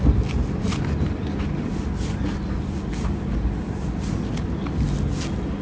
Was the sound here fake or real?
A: real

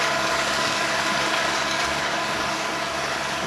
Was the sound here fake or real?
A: fake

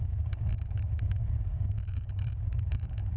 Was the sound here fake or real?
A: fake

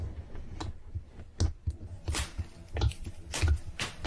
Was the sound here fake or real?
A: real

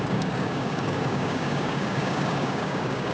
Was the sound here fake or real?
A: fake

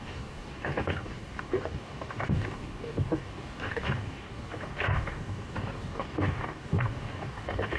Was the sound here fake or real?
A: fake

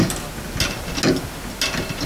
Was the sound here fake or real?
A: real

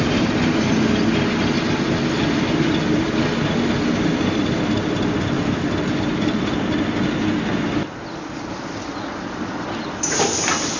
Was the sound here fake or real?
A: real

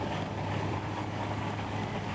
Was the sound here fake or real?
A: fake